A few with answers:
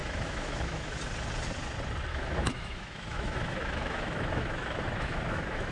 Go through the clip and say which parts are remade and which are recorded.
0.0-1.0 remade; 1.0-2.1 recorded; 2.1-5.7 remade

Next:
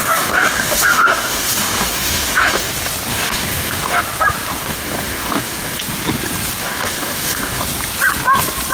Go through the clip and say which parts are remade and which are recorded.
0.0-2.7 remade; 2.7-3.1 recorded; 3.1-4.0 remade; 4.0-4.6 recorded; 4.6-5.8 remade; 5.8-6.6 recorded; 6.6-7.6 remade; 7.6-8.7 recorded

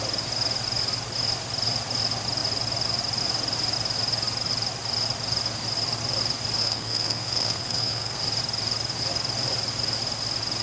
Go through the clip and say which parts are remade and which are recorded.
0.0-6.6 recorded; 6.6-8.2 remade; 8.2-10.6 recorded

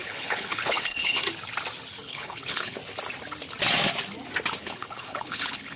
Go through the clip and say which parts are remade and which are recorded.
0.0-1.2 remade; 1.2-2.0 recorded; 2.0-2.8 remade; 2.8-4.6 recorded; 4.6-5.8 remade

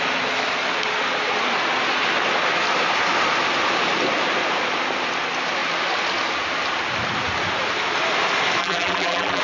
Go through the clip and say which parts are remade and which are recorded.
0.0-8.6 recorded; 8.6-9.4 remade

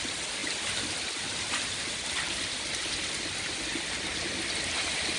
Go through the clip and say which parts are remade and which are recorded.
0.0-5.2 recorded

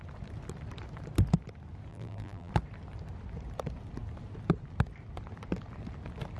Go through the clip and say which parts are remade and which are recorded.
0.0-1.9 recorded; 1.9-2.5 remade; 2.5-6.4 recorded

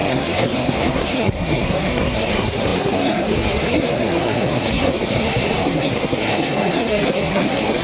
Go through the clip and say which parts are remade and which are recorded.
0.0-7.8 remade